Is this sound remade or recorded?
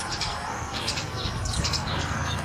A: remade